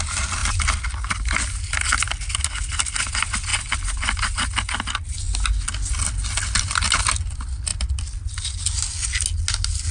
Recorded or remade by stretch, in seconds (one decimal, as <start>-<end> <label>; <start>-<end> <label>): 0.0-9.9 recorded